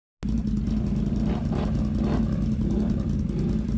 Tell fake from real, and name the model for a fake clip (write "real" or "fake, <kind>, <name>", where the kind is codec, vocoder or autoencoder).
real